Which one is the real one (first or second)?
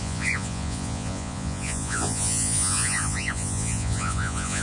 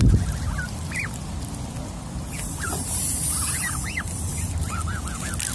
second